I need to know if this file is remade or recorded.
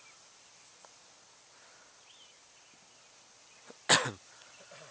recorded